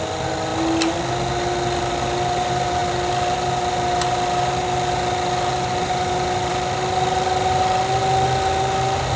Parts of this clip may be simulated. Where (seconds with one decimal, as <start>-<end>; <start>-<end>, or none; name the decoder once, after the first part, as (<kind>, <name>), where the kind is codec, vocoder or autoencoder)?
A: none